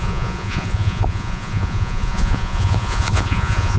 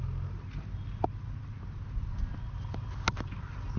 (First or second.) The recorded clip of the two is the second